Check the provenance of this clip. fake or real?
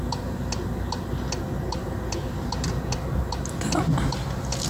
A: real